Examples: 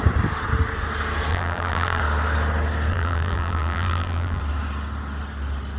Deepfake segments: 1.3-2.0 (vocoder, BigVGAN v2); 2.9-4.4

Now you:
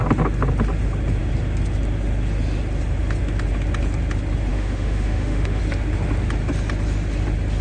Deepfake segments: 4.5-5.6 (autoencoder, DAC-VAE)

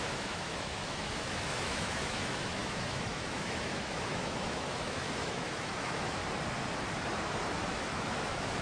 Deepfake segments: 0.0-6.2 (autoencoder, DAC-VAE); 7.4-8.6

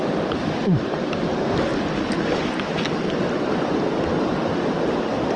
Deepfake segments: 0.6-1.2 (vocoder, BigVGAN v2)

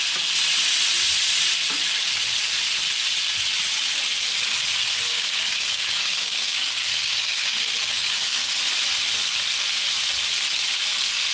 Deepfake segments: 5.1-8.5 (codec, DAC)

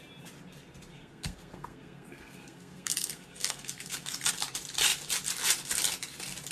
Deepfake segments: 0.9-4.3 (codec, SNAC)

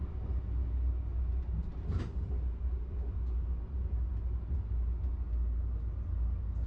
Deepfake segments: none